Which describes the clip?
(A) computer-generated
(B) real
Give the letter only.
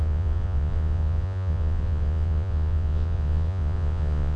A